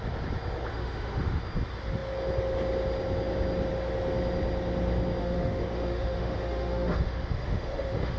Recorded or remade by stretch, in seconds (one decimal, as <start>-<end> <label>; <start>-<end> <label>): 0.0-0.7 recorded; 0.7-1.4 remade; 1.4-5.2 recorded; 5.2-8.2 remade